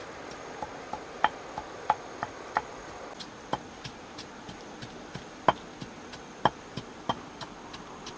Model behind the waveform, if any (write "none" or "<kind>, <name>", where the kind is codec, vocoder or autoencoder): none